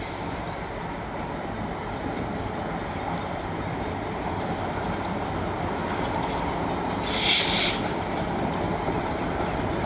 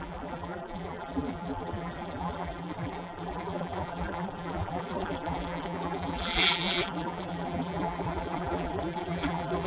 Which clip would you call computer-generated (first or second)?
second